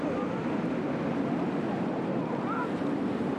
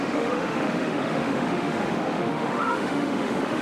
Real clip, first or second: first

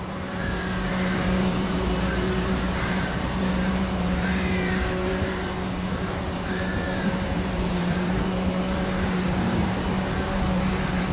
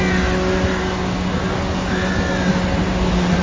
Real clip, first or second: second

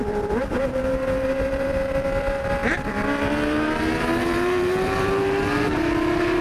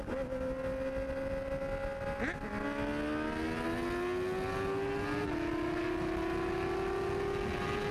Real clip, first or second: second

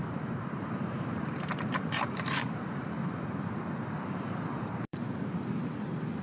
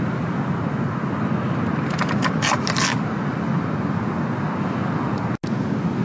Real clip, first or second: second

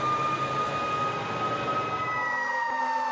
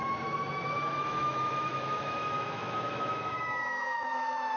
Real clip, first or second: first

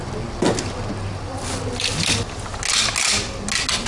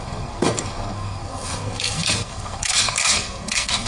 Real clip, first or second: first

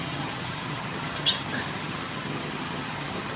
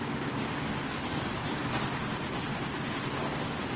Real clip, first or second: second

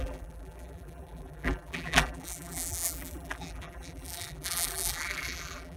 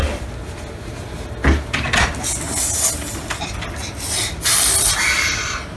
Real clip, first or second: second